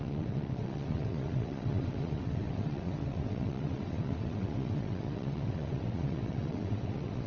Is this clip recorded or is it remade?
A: remade